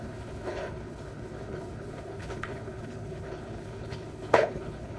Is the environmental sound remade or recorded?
remade